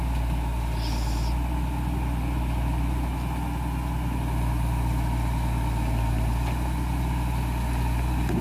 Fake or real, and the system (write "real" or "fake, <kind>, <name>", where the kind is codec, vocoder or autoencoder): real